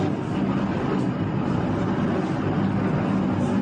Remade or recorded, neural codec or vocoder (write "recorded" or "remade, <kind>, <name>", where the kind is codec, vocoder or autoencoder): recorded